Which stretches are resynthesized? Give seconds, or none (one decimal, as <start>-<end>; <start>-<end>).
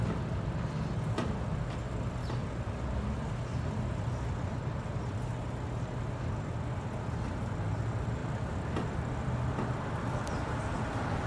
none